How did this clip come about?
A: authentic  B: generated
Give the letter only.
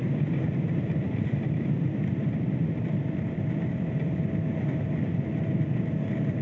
B